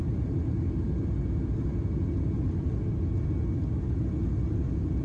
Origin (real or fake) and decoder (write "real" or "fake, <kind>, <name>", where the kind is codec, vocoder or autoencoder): real